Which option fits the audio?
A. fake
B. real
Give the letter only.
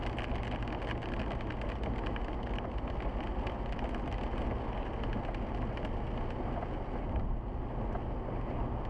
B